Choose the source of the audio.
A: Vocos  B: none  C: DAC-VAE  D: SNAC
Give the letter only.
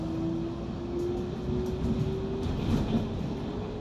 B